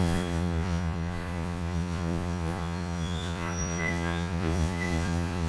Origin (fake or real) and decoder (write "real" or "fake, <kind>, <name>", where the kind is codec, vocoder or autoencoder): fake, vocoder, Vocos